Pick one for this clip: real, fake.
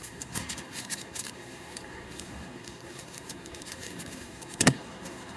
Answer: fake